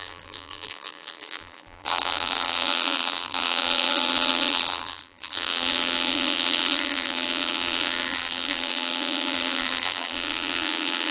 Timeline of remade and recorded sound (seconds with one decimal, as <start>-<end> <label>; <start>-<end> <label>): 0.0-11.1 remade